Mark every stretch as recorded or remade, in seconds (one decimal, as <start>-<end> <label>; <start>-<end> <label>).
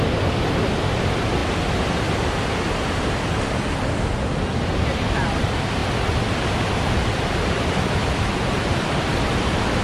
0.0-1.4 remade; 1.4-4.1 recorded; 4.1-8.0 remade; 8.0-8.6 recorded; 8.6-9.8 remade